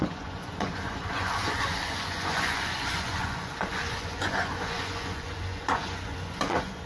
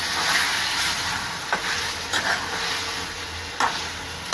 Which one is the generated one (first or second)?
first